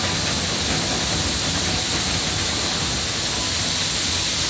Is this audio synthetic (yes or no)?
no